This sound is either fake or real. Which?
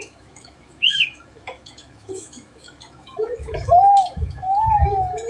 fake